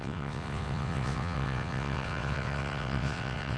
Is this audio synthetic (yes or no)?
yes